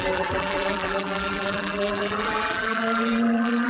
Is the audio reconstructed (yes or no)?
yes